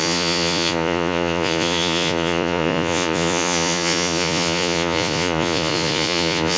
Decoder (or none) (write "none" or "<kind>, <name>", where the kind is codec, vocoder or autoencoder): vocoder, Vocos